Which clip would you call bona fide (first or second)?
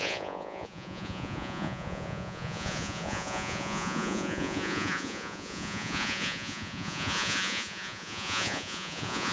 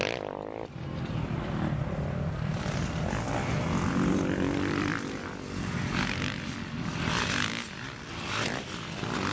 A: second